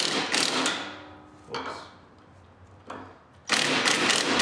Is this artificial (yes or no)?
no